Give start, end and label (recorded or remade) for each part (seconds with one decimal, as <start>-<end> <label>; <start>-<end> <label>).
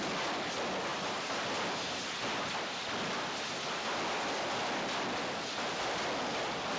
0.0-6.8 recorded